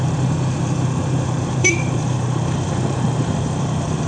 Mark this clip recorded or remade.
remade